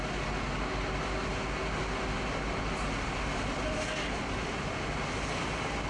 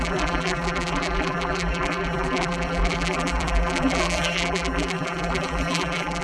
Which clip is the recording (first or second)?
first